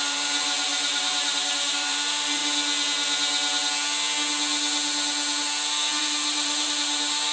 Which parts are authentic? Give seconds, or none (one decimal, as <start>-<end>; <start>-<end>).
2.4-6.0